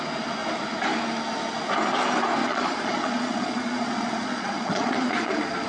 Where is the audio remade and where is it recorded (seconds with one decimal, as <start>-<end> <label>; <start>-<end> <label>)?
0.0-2.4 recorded; 2.4-5.7 remade